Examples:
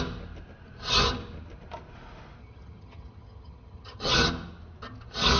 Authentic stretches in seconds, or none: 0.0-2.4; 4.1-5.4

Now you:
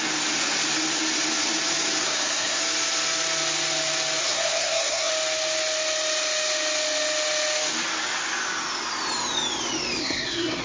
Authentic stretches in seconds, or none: 0.0-2.0; 2.6-4.2; 5.1-10.0

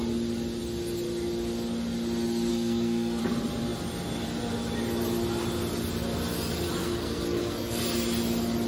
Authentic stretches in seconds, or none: 0.0-2.5; 3.2-6.8; 7.8-8.7

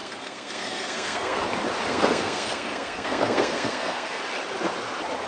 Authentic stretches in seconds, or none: 1.4-1.9; 4.2-5.3

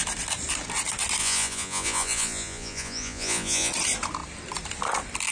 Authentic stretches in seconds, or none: 0.0-1.2; 3.7-5.3

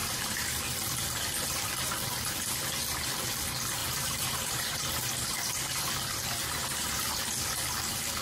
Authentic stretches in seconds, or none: 0.6-3.8; 5.1-6.6; 7.2-8.2

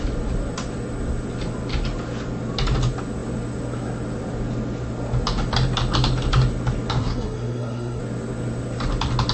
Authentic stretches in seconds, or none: 0.0-7.0; 8.0-9.3

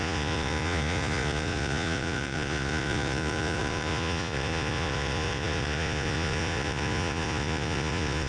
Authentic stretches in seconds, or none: none